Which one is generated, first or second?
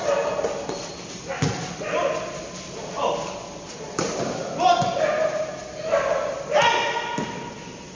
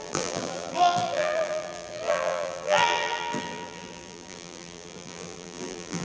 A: second